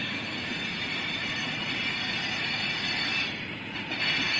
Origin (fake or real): fake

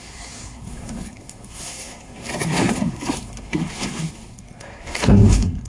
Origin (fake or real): fake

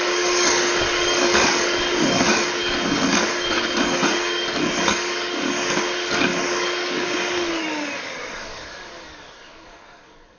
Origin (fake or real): fake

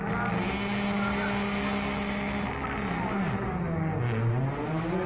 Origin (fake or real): real